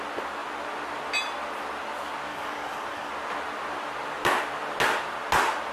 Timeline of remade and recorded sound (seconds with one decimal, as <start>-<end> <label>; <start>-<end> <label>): 0.0-2.3 recorded; 2.3-3.1 remade; 3.1-5.7 recorded